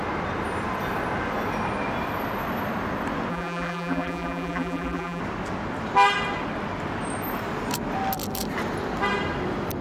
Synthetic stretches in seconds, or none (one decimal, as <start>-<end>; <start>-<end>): 3.3-5.2